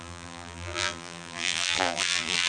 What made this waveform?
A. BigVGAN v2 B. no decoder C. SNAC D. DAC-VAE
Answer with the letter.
A